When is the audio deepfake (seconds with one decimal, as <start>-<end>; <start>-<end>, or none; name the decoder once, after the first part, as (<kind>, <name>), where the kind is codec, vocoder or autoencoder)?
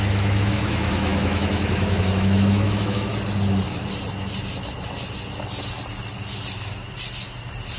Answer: 0.0-3.1 (autoencoder, DAC-VAE)